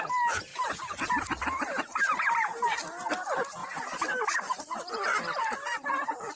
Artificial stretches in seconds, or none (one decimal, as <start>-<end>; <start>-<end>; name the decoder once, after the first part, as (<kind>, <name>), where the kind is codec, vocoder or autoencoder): none